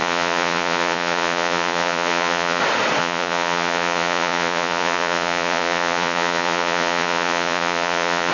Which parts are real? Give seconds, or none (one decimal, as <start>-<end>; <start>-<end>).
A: 2.6-3.0